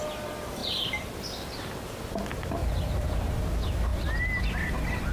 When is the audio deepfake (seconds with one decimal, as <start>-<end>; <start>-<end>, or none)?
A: 0.6-1.1; 2.6-3.3